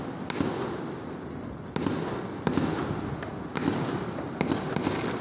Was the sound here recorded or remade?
recorded